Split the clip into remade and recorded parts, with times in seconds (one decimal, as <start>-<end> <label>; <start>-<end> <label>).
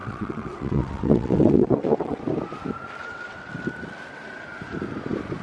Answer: 0.0-2.2 remade; 2.2-3.0 recorded; 3.0-3.5 remade; 3.5-5.4 recorded